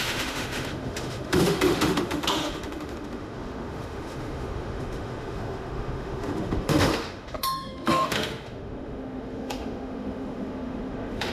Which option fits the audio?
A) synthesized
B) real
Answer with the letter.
A